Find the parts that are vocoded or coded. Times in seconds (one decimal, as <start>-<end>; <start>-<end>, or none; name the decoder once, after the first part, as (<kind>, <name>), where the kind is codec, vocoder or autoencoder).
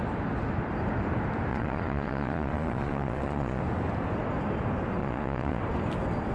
1.5-3.6 (vocoder, Vocos); 5.0-5.6